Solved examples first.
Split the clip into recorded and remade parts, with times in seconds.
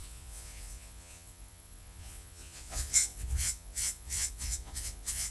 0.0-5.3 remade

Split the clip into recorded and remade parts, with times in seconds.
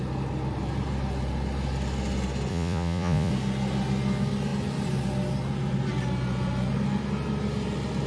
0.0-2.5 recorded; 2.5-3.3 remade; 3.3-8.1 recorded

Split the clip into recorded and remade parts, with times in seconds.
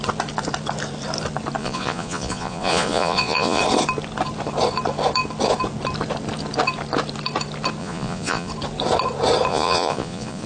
0.0-1.6 recorded; 1.6-3.6 remade; 3.6-7.8 recorded; 7.8-8.5 remade; 8.5-9.5 recorded; 9.5-10.5 remade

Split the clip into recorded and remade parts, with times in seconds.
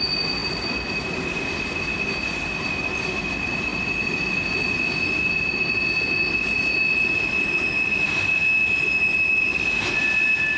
0.0-10.6 recorded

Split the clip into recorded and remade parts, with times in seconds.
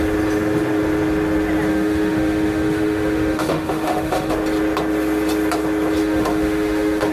0.0-1.7 recorded; 1.7-4.3 remade; 4.3-6.0 recorded; 6.0-7.1 remade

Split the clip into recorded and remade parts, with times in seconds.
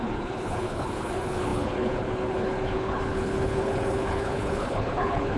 0.0-5.4 remade